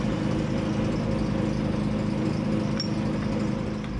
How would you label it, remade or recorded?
recorded